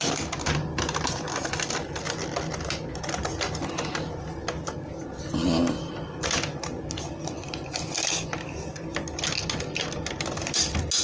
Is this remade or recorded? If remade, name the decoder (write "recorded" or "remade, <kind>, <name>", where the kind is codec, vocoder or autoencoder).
recorded